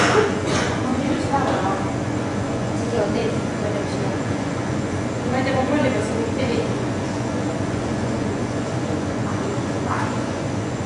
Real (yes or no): no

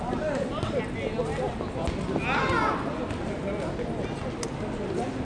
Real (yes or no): yes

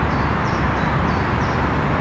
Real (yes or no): yes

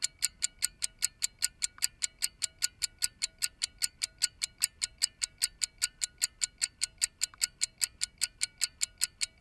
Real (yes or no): yes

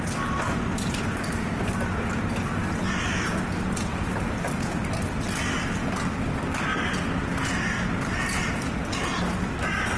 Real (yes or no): yes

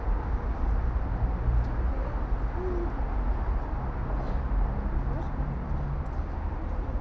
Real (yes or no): yes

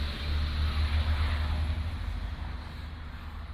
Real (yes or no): yes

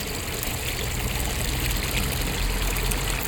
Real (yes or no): yes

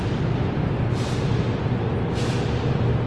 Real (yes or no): yes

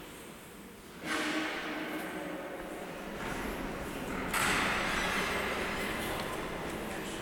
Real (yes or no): yes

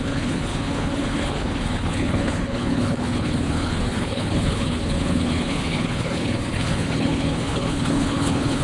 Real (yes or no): no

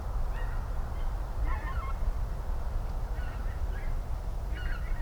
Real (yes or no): yes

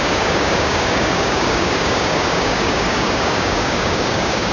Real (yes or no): no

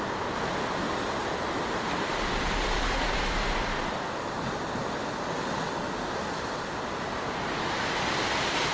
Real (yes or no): yes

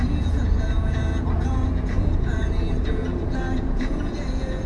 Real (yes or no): no